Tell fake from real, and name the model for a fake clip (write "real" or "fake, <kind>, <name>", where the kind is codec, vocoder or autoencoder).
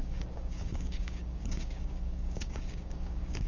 fake, codec, DAC